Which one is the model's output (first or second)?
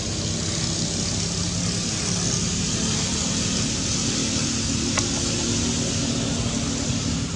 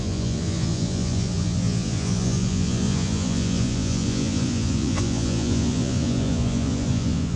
second